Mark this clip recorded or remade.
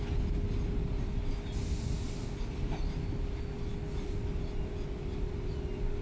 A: recorded